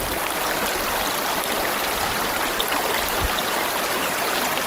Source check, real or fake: real